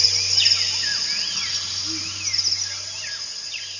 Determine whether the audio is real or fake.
real